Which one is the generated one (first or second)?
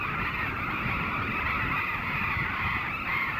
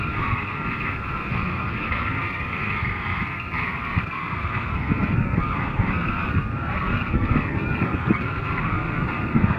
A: second